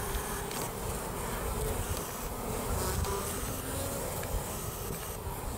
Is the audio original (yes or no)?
yes